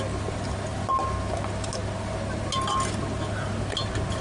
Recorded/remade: recorded